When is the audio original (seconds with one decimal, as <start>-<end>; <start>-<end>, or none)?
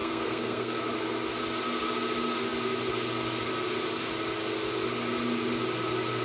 0.8-6.2